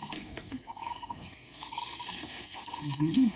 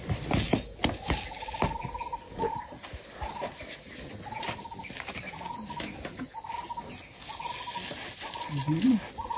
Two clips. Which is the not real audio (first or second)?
first